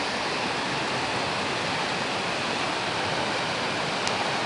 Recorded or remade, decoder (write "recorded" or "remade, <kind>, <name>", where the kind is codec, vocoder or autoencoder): recorded